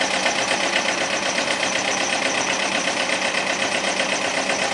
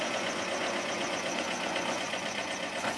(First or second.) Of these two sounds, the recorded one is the first